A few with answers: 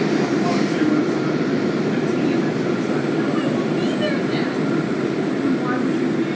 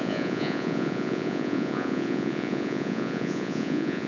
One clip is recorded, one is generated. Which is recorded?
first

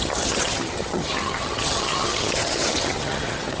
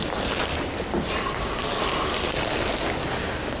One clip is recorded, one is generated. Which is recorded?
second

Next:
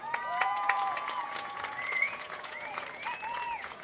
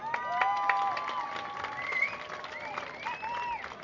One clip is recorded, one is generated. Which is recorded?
second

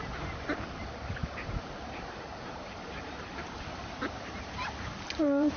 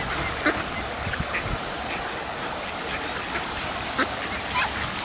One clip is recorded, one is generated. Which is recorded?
second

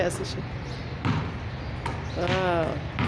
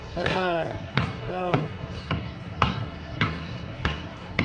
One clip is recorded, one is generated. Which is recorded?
first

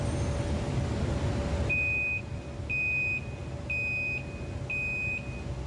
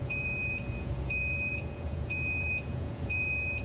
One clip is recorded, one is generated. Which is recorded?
first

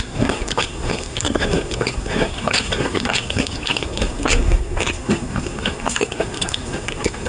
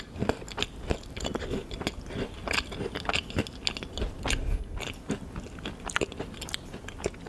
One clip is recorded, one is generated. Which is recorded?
second